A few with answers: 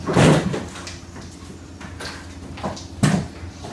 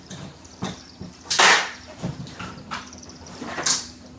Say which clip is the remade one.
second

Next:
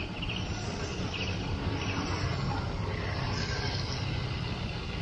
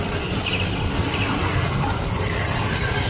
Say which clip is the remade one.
second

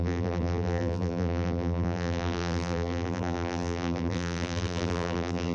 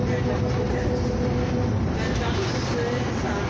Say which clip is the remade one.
first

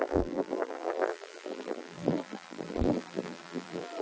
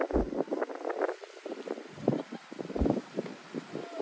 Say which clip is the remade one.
first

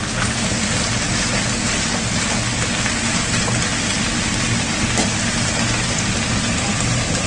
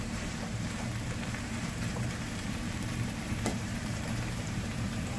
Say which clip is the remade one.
second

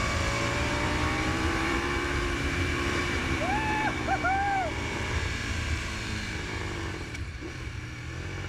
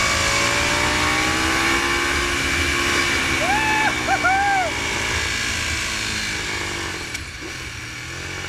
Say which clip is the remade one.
first